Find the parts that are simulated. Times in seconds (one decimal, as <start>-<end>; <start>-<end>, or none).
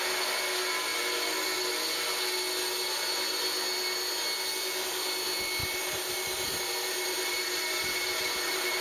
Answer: 5.6-8.8